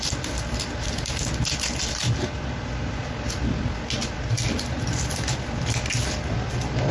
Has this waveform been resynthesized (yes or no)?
no